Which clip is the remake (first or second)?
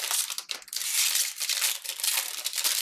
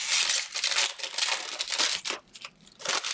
first